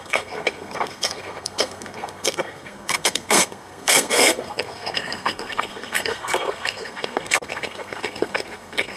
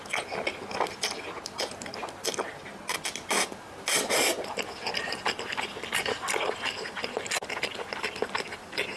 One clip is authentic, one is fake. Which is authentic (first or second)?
second